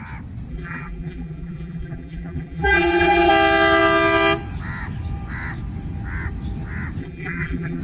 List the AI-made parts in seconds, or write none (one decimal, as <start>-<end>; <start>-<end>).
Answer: 0.5-3.3; 7.0-7.8